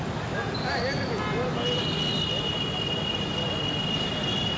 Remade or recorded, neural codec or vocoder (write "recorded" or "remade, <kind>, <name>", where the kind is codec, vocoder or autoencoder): recorded